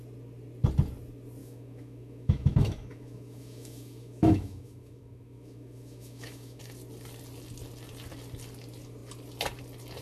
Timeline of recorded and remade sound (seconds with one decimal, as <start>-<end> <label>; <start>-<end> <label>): 0.0-1.4 recorded; 1.4-6.6 remade; 6.6-10.0 recorded